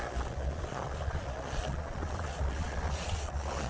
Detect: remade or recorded remade